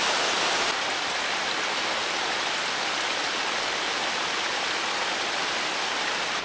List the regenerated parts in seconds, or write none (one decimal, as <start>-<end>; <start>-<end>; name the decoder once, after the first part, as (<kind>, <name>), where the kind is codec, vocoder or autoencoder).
2.0-5.6 (vocoder, BigVGAN v2)